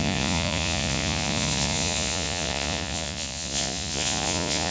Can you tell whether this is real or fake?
fake